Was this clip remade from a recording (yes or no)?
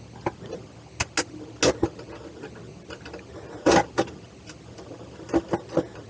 no